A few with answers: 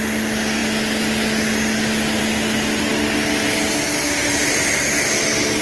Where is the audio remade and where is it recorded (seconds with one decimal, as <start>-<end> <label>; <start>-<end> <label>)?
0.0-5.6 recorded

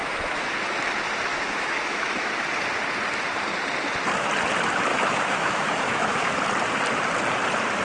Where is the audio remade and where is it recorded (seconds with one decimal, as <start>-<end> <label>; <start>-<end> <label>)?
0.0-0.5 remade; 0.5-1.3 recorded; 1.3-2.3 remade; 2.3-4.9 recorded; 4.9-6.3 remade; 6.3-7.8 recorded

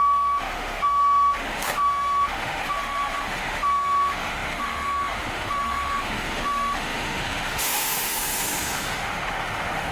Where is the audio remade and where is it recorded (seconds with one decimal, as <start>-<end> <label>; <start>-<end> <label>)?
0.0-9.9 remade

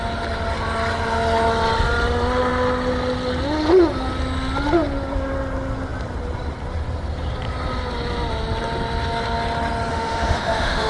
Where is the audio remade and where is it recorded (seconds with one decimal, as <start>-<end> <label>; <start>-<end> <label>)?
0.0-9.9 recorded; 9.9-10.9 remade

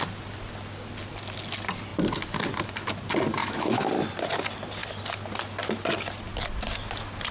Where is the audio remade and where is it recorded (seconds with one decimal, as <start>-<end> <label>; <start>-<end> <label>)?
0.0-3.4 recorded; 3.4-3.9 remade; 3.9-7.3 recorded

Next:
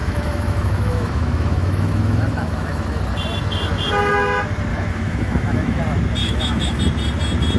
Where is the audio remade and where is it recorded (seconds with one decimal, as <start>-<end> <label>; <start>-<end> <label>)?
0.0-3.0 remade; 3.0-4.7 recorded; 4.7-5.8 remade; 5.8-6.2 recorded; 6.2-6.8 remade; 6.8-7.6 recorded